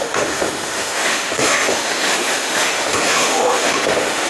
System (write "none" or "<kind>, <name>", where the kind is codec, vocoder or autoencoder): autoencoder, DAC-VAE